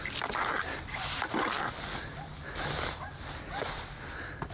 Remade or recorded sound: recorded